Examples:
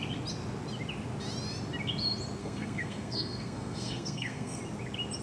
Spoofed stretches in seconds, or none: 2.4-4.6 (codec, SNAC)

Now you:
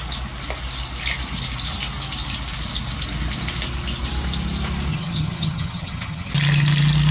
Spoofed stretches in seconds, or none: 4.9-6.3 (vocoder, HiFi-GAN)

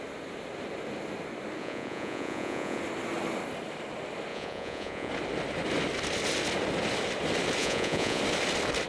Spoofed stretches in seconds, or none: 1.6-2.8 (vocoder, Vocos); 4.3-5.1; 7.6-8.2

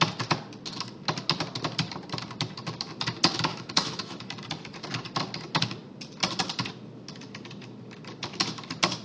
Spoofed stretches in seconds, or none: 3.5-4.3 (autoencoder, DAC-VAE)

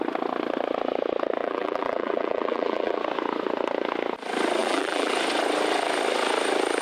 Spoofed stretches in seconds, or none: 1.4-3.0 (vocoder, BigVGAN v2); 4.6-5.1

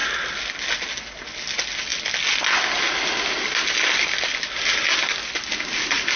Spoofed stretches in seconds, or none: none

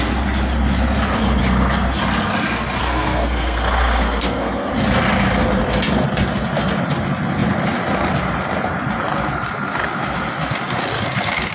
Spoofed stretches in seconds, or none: 2.8-4.7 (codec, SNAC)

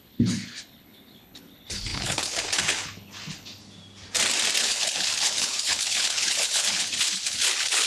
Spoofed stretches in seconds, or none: 0.0-3.6 (codec, HILCodec); 4.6-7.9